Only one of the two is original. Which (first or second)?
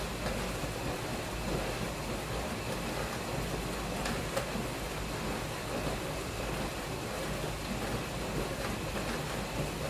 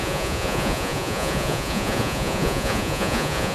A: first